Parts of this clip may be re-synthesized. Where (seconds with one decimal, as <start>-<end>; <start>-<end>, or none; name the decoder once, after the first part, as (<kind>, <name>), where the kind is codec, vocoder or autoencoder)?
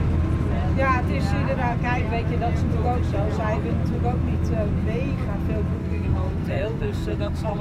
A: 5.8-7.6 (codec, SNAC)